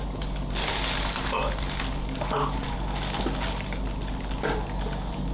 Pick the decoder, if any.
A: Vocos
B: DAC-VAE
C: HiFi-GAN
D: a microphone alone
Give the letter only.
D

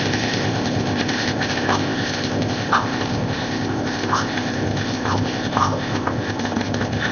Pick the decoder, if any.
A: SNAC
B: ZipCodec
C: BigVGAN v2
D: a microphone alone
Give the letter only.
B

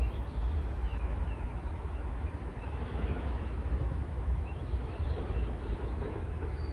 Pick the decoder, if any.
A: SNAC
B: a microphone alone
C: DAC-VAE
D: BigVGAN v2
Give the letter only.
C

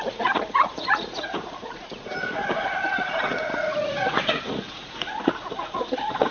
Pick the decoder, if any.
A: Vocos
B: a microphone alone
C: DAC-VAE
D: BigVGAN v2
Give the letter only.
A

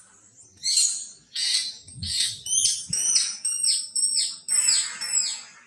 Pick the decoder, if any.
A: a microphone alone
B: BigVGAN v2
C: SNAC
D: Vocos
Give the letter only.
A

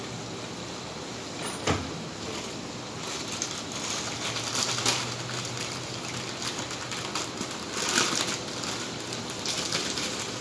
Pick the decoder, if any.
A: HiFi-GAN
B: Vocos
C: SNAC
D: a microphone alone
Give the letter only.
D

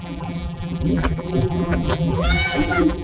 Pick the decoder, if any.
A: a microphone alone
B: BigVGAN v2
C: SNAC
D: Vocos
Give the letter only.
B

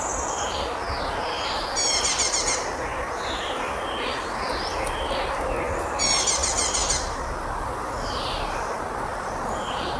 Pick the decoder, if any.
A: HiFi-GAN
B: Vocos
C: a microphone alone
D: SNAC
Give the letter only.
C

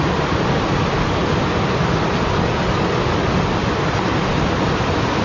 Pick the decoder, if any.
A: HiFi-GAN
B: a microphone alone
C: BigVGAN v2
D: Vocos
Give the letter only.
B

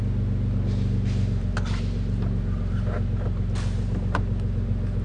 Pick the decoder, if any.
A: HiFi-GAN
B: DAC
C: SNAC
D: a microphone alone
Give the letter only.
D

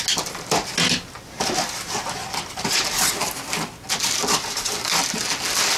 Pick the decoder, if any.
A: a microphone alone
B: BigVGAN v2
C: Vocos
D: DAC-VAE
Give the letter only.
A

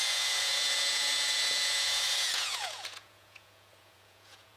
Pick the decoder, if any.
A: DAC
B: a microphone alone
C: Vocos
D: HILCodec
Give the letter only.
C